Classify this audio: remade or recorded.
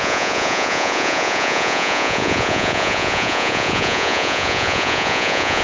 remade